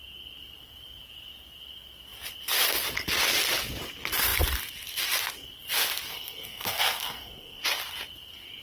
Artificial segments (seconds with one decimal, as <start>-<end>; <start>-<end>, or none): 6.1-7.6